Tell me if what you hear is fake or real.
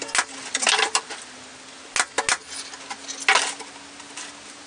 real